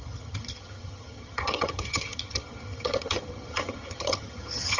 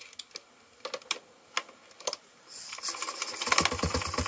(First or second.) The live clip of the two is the second